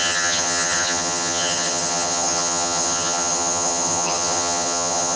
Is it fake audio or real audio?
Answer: fake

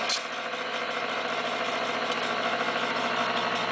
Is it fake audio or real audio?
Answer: real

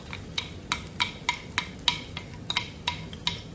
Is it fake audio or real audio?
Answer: real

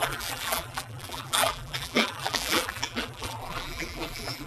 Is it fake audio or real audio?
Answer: fake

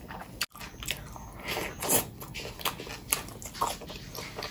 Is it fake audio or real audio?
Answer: real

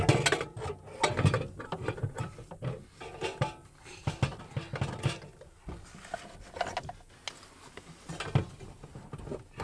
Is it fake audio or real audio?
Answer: real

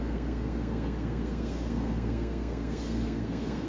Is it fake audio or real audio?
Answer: fake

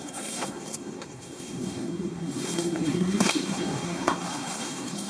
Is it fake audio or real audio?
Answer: fake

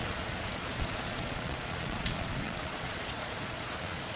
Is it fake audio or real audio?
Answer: fake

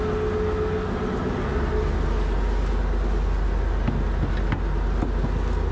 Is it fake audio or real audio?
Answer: real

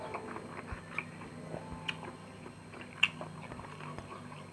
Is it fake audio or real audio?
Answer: real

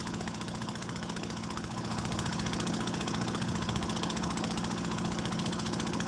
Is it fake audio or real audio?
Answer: fake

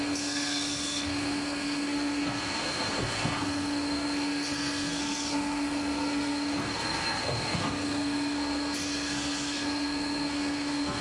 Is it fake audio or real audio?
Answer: fake